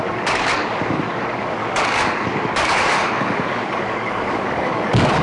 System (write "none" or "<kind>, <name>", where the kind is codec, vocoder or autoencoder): codec, DAC